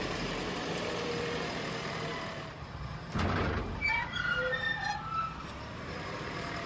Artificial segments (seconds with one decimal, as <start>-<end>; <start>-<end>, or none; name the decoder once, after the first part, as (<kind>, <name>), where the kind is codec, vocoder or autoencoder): 0.0-6.7 (vocoder, BigVGAN v2)